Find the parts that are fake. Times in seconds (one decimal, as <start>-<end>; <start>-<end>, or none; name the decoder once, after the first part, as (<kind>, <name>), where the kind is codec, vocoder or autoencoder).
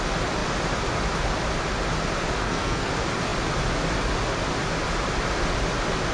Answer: 2.4-2.9 (codec, SNAC)